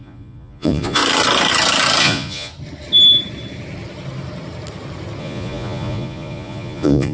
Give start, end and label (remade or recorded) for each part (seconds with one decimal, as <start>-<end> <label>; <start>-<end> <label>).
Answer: 0.0-1.0 remade; 1.0-2.0 recorded; 2.0-2.5 remade; 2.5-5.2 recorded; 5.2-7.1 remade